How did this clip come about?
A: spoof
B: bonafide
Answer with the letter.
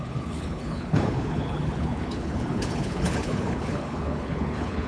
A